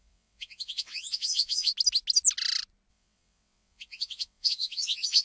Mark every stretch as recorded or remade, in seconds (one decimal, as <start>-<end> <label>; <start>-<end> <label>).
0.0-1.7 remade; 1.7-2.9 recorded; 2.9-5.2 remade